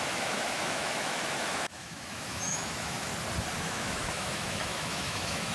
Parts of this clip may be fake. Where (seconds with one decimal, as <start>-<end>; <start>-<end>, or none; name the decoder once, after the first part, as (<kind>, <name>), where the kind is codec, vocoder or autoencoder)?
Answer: 0.0-3.1 (autoencoder, DAC-VAE); 3.6-5.5